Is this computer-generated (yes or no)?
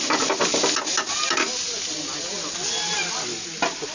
no